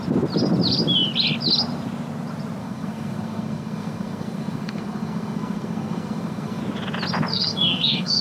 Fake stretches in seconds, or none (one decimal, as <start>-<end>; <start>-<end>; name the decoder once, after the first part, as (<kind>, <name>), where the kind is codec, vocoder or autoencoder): 2.6-6.6 (codec, SNAC); 7.3-8.2